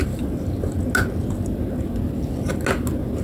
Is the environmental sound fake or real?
real